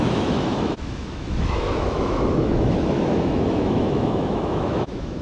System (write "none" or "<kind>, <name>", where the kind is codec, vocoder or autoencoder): autoencoder, DAC-VAE